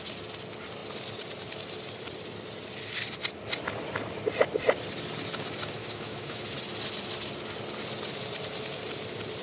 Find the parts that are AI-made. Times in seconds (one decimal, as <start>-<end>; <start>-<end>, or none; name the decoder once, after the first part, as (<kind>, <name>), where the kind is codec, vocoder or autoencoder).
5.8-6.4 (autoencoder, DAC-VAE)